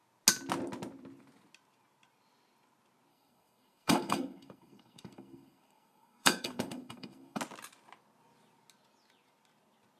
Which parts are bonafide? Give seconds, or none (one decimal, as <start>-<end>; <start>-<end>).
0.0-3.1; 7.4-10.0